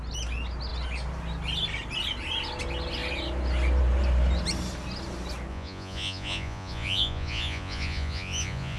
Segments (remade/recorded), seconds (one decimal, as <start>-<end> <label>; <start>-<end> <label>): 0.0-5.5 recorded; 5.5-8.8 remade